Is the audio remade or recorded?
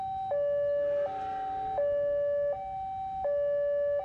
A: recorded